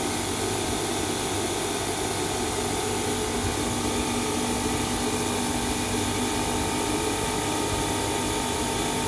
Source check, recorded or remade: recorded